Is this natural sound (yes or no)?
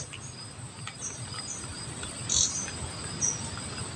yes